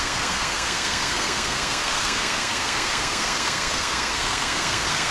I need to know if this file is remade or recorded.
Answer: remade